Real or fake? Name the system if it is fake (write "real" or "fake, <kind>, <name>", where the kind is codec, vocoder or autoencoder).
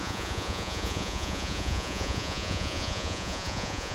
fake, vocoder, Vocos